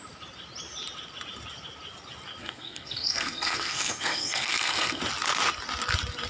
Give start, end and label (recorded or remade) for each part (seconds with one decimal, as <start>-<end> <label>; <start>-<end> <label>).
0.0-2.4 recorded; 2.4-5.0 remade; 5.0-6.3 recorded